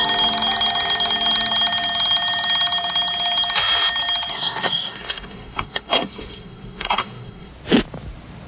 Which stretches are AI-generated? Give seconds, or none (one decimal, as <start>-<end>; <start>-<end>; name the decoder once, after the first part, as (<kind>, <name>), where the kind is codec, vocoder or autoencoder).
4.3-7.5 (codec, SNAC)